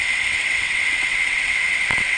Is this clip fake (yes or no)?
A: yes